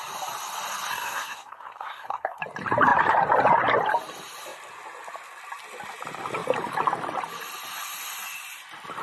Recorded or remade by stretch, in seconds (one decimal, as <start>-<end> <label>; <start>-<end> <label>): 0.0-0.9 recorded; 0.9-2.4 remade; 2.4-9.0 recorded